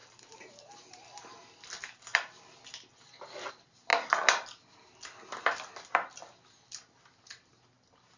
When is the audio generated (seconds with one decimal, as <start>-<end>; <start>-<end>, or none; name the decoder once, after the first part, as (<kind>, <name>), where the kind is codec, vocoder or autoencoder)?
none